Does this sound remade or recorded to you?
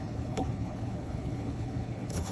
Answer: remade